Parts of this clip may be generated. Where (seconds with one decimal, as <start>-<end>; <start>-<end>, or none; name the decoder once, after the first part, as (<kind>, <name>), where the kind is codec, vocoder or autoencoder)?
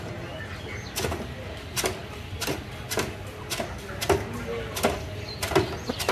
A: none